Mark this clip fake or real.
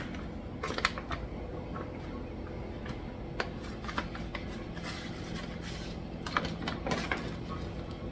real